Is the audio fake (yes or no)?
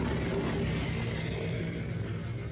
no